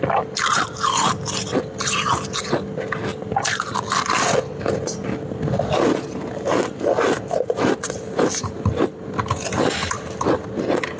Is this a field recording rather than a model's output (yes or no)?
yes